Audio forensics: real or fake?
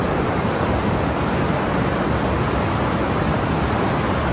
real